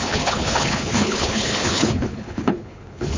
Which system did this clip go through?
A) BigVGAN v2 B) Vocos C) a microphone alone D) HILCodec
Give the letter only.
D